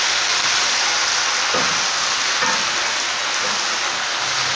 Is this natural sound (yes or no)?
yes